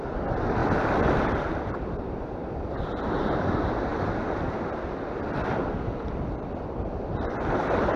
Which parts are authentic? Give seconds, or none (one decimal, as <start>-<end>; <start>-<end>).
0.0-8.0